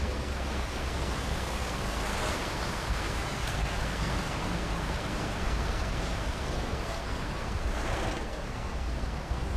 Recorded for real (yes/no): no